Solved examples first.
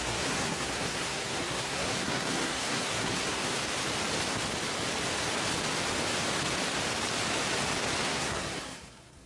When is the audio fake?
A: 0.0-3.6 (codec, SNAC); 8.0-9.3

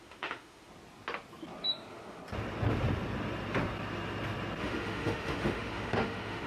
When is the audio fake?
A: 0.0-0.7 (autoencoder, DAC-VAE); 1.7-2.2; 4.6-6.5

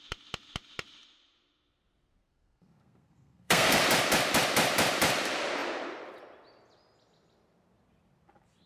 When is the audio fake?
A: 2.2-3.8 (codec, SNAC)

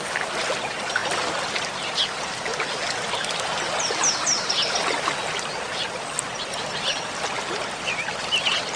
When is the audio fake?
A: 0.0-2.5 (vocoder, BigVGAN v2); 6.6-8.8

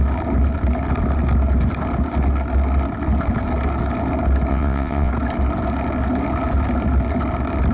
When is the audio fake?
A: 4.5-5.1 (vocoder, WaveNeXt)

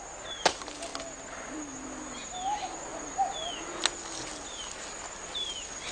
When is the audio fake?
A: none

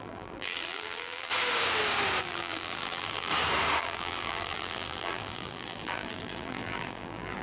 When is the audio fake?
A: 0.0-1.3 (vocoder, BigVGAN v2); 2.2-3.3; 3.8-7.4

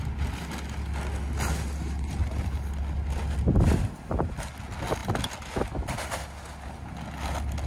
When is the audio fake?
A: none